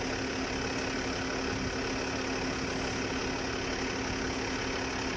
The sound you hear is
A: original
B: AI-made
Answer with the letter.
A